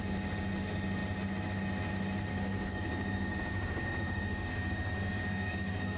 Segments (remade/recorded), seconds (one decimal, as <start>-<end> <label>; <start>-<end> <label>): 0.0-2.3 recorded; 2.3-6.0 remade